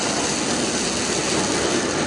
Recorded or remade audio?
recorded